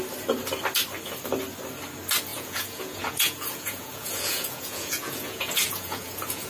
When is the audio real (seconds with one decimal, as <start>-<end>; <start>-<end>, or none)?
0.0-2.3